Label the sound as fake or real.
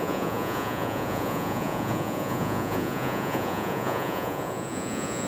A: fake